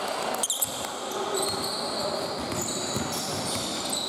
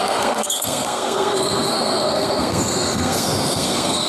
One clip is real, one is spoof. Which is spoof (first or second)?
second